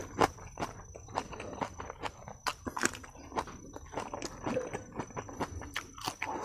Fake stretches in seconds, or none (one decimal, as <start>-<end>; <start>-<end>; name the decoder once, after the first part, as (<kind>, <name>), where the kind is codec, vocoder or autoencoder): none